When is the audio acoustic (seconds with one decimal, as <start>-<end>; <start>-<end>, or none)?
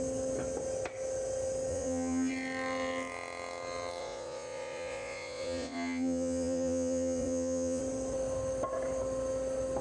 0.0-1.7; 2.3-4.0; 7.8-9.8